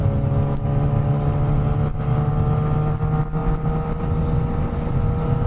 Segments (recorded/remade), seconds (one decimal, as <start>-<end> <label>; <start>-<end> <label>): 0.0-5.5 recorded